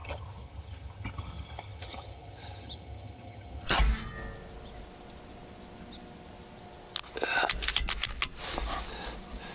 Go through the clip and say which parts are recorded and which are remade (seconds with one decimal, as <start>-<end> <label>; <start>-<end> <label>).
0.0-3.8 remade; 3.8-9.5 recorded